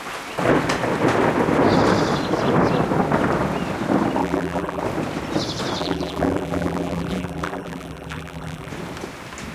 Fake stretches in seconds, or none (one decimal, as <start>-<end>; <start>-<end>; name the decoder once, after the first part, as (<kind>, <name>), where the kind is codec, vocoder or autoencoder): 4.2-4.8 (vocoder, BigVGAN v2); 5.8-8.7